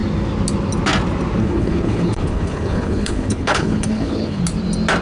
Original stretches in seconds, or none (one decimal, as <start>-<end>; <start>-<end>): 0.0-1.4; 4.4-5.0